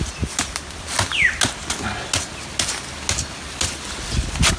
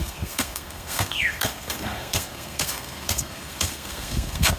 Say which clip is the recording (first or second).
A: first